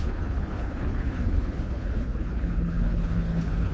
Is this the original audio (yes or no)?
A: no